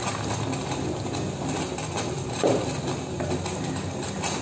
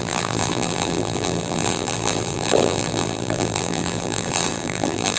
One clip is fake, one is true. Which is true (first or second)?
first